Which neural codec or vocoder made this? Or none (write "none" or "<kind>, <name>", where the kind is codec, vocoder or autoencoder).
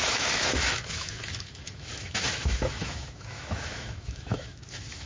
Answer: autoencoder, DAC-VAE